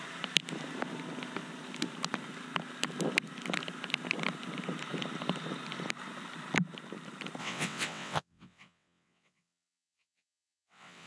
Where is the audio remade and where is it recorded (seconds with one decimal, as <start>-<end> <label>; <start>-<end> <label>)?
0.0-7.4 recorded; 7.4-11.1 remade